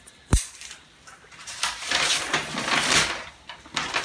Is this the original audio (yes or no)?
yes